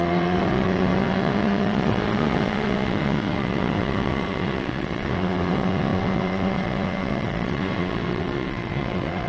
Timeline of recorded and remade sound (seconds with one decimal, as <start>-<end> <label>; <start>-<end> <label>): 0.0-9.3 remade